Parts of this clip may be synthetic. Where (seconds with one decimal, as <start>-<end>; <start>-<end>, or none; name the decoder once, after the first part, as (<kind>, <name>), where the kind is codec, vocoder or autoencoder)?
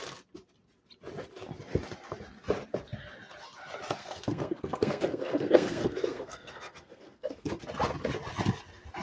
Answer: 4.0-7.5 (codec, SNAC)